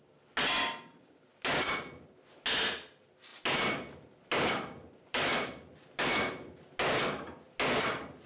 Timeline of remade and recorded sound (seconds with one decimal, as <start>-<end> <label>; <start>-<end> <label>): 0.0-8.3 recorded

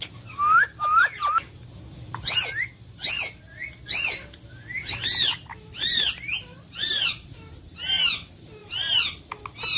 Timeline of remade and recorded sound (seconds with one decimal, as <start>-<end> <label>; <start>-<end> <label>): 0.0-9.8 recorded